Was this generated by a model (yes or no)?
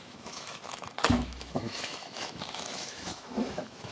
yes